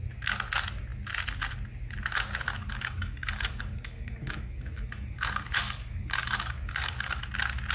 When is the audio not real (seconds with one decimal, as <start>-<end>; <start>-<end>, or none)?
2.6-7.2